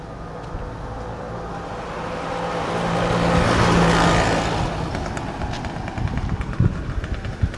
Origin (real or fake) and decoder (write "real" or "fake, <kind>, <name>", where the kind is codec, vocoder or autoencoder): real